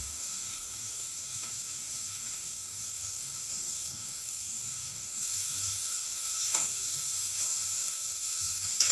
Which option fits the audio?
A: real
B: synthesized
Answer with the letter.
B